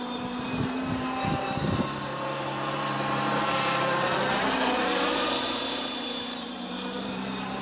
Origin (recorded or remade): remade